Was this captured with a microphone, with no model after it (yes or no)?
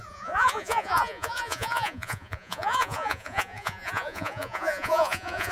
no